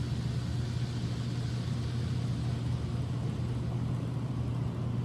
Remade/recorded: recorded